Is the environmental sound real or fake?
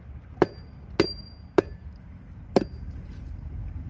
real